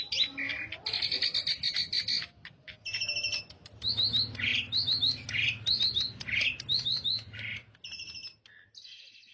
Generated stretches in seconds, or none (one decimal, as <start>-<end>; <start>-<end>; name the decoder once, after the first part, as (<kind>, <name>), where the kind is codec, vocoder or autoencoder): none